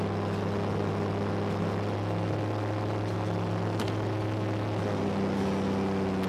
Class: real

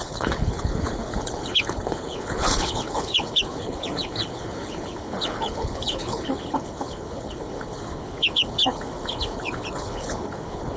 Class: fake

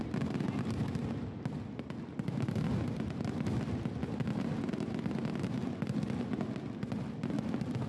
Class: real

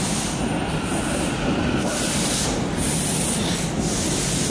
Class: real